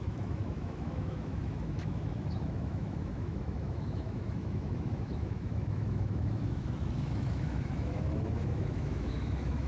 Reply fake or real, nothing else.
fake